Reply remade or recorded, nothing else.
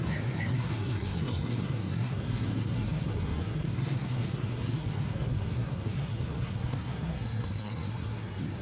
remade